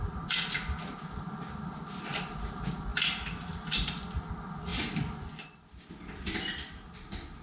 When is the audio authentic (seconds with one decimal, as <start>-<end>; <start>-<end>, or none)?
0.0-7.4